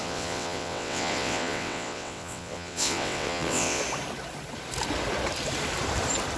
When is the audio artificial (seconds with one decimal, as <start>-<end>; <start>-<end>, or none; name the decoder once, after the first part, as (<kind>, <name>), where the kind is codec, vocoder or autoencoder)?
0.0-3.8 (vocoder, WaveNeXt)